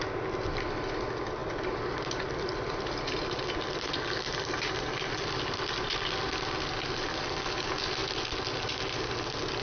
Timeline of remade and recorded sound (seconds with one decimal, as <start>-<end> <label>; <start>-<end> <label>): 0.0-1.4 recorded; 1.4-6.4 remade; 6.4-9.6 recorded